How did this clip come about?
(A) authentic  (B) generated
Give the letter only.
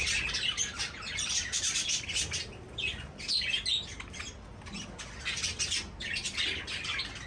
A